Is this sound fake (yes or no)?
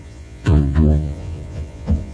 yes